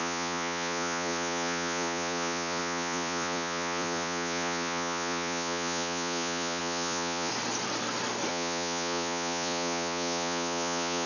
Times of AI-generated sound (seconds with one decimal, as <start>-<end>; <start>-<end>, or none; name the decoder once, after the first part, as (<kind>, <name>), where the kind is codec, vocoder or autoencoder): 0.0-7.3 (vocoder, Vocos); 8.3-11.1